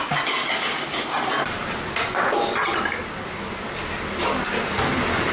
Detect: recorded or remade recorded